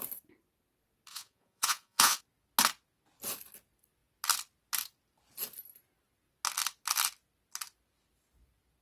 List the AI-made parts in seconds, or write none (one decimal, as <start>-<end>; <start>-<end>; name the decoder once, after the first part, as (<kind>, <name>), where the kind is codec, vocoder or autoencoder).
1.1-2.2 (vocoder, Vocos)